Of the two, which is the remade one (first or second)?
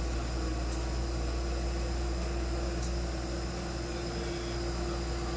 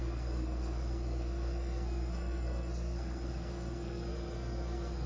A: second